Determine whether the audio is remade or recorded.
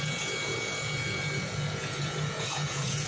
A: remade